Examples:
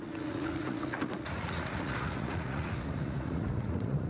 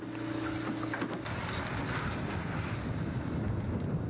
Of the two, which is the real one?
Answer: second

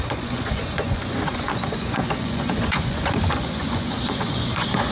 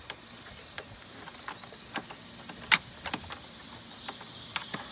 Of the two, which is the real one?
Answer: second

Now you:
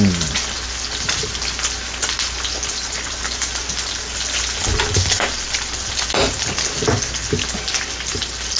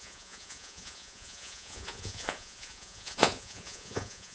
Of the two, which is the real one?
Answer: first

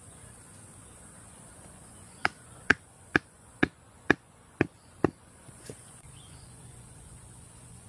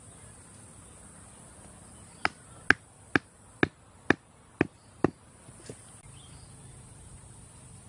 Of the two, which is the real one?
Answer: second